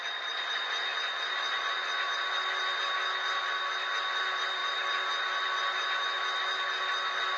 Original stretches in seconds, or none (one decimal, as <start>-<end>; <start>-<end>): 0.0-7.4